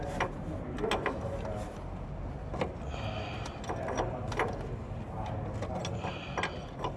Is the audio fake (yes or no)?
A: no